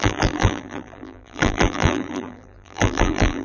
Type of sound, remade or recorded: remade